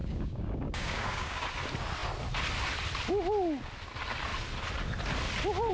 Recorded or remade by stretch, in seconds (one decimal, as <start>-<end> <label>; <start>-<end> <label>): 0.0-1.5 remade; 1.5-5.7 recorded